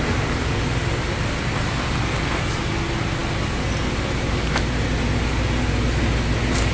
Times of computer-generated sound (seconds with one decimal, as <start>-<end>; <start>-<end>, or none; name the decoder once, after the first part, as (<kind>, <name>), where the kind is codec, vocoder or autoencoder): none